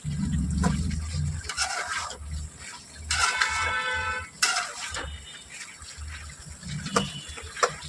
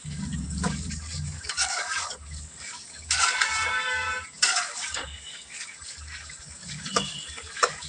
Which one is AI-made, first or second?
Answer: second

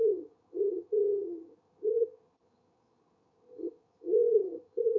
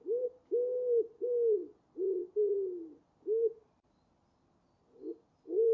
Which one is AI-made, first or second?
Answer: first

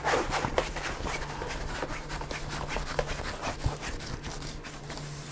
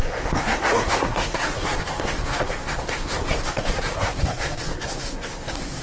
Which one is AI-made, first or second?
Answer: second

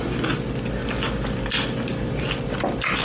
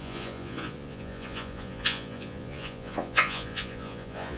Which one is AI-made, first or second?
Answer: second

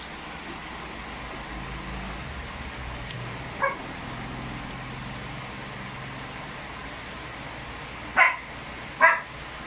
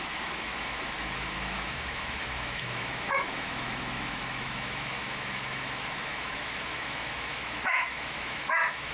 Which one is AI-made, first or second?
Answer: second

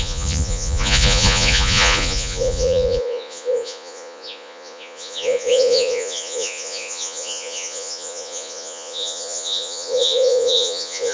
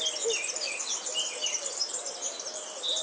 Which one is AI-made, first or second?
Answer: first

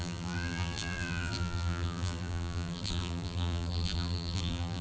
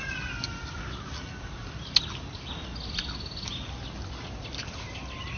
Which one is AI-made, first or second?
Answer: first